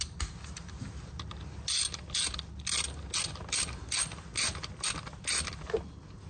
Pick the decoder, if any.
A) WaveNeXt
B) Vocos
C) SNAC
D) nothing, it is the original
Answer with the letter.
D